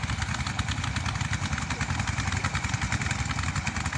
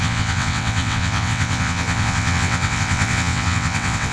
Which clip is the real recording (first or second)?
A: first